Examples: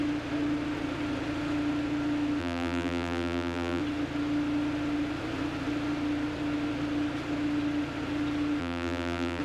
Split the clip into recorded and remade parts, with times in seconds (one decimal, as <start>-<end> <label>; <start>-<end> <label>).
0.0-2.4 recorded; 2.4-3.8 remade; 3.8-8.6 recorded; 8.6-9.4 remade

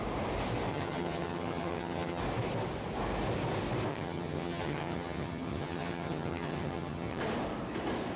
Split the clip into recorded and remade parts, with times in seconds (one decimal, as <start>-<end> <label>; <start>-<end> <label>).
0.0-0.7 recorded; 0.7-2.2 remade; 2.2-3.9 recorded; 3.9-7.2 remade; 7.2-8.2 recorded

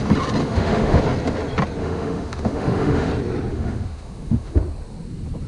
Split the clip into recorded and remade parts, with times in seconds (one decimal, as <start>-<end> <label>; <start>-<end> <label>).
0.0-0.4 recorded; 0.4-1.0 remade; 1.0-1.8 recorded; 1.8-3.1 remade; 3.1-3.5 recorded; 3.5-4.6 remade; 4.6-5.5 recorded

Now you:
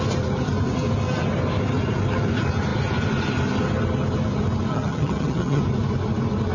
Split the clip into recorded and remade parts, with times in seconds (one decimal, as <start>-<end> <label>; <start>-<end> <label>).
0.0-4.7 recorded; 4.7-5.6 remade; 5.6-6.5 recorded

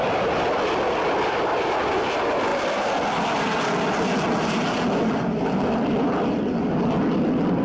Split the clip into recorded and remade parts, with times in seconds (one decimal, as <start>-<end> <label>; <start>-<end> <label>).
0.0-7.6 recorded